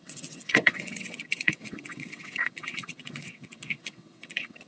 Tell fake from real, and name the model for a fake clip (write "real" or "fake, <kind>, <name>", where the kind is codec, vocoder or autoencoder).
fake, vocoder, WaveNeXt